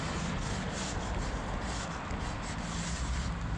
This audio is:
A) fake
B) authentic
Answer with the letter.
B